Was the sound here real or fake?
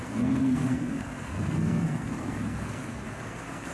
fake